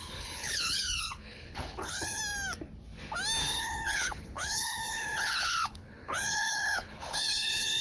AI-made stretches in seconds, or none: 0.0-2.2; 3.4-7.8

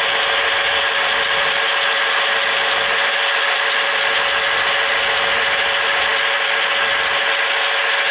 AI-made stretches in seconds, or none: 0.6-4.9

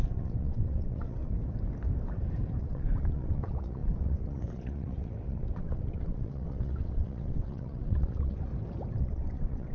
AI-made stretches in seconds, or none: 0.0-1.2; 2.6-8.5; 9.0-9.7

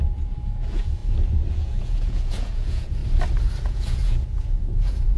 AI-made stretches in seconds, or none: 0.0-1.0; 1.5-3.0; 3.6-5.2

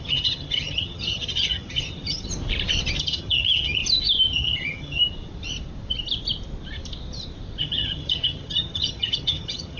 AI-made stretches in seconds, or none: 0.0-2.3; 3.0-3.8; 4.3-5.0; 7.6-9.8

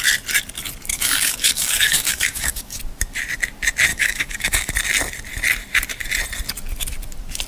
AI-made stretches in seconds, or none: 0.9-2.8; 3.9-4.7

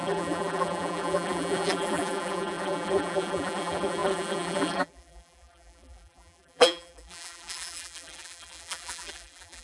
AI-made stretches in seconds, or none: 0.0-9.6